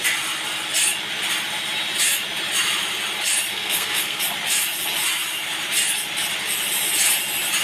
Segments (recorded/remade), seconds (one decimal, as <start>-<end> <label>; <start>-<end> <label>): 0.0-3.5 recorded; 3.5-4.2 remade; 4.2-7.6 recorded